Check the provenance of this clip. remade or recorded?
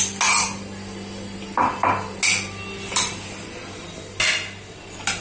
recorded